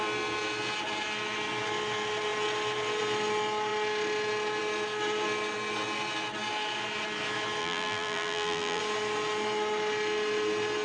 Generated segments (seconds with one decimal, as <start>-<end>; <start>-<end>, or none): 7.6-8.8